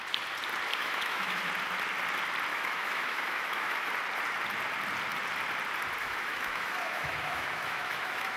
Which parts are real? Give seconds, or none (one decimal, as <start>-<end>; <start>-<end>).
0.0-0.7; 1.4-2.5; 3.9-6.0